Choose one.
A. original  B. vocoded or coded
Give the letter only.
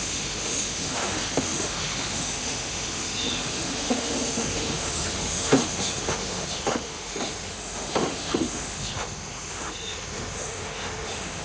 B